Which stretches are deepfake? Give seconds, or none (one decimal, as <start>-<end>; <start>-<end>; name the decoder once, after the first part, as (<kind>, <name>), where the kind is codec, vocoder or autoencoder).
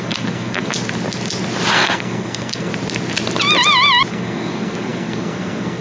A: 0.0-0.7 (codec, SNAC); 1.7-2.7; 4.1-5.8